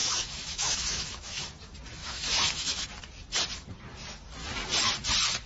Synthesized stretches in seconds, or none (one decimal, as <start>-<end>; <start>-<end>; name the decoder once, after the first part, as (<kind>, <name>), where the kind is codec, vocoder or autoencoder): 0.0-1.5 (autoencoder, DAC-VAE); 2.0-2.9